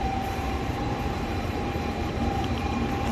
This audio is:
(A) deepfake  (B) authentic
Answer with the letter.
A